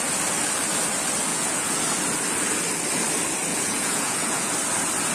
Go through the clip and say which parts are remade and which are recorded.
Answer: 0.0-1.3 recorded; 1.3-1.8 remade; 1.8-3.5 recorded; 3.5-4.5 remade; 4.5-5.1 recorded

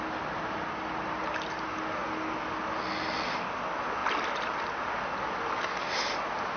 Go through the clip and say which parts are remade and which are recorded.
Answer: 0.0-6.6 recorded

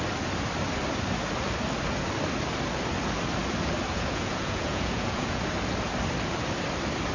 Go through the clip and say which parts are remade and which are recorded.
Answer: 0.0-3.9 recorded; 3.9-5.4 remade; 5.4-7.1 recorded

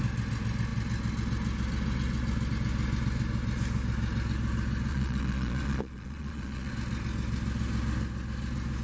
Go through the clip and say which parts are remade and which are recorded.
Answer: 0.0-4.9 recorded; 4.9-6.7 remade; 6.7-8.8 recorded

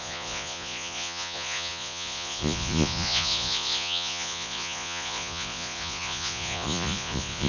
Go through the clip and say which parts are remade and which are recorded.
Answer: 0.0-7.5 remade